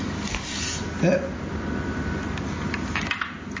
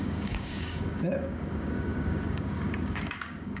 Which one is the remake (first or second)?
second